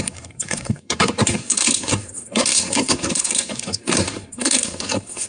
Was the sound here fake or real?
fake